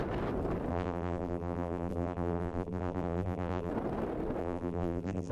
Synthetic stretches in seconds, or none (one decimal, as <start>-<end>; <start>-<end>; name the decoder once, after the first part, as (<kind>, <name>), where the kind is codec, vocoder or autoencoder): 0.7-3.7 (vocoder, BigVGAN v2); 4.4-5.3